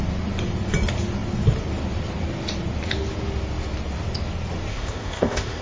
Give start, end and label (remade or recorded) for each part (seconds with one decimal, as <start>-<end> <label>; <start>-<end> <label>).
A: 0.0-4.7 recorded; 4.7-5.6 remade